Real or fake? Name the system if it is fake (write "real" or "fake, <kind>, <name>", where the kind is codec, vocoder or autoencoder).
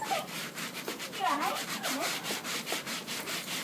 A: fake, vocoder, BigVGAN v2